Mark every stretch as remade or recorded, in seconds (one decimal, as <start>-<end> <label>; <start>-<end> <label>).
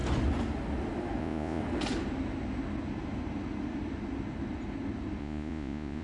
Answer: 0.0-1.2 recorded; 1.2-1.6 remade; 1.6-5.2 recorded; 5.2-6.0 remade